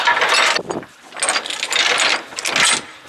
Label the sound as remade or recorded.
recorded